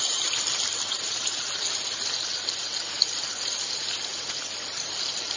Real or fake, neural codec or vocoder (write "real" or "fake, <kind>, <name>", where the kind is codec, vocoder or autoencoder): real